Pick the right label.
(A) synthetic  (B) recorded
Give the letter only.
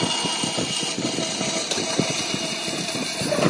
B